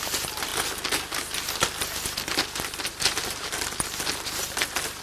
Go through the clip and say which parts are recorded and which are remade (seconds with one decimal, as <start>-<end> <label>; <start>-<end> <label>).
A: 0.0-0.5 remade; 0.5-2.9 recorded; 2.9-5.0 remade